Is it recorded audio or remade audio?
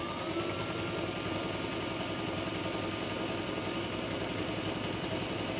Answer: recorded